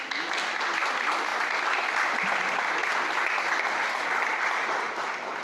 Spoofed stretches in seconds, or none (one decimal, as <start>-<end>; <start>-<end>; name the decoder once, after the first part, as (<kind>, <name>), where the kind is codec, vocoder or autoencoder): 0.0-3.2 (vocoder, BigVGAN v2); 4.0-5.4